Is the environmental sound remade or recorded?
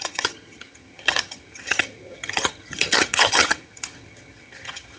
remade